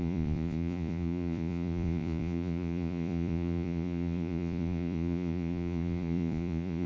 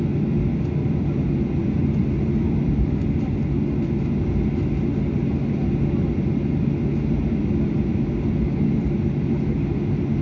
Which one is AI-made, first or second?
first